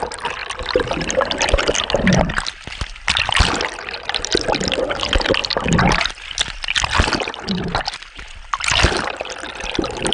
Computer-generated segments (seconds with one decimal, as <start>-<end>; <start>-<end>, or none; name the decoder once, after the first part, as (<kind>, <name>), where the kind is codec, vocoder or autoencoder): none